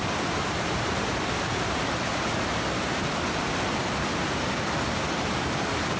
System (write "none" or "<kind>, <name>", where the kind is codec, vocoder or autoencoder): none